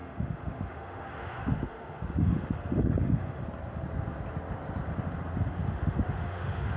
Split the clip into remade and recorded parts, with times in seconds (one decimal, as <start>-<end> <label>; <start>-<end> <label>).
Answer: 0.0-3.4 remade; 3.4-5.6 recorded; 5.6-6.8 remade